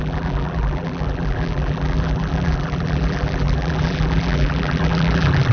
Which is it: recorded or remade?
remade